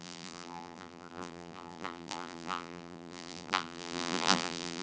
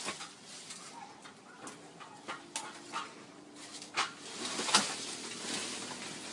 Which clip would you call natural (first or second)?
second